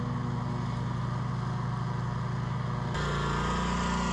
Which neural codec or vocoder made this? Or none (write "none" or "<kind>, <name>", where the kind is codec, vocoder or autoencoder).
none